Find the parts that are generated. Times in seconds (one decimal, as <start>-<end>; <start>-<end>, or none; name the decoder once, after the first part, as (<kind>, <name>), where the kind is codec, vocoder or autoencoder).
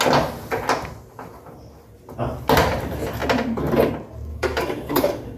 4.3-5.4 (codec, DAC)